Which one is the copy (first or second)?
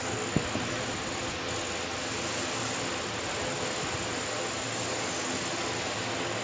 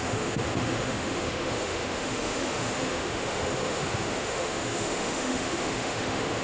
second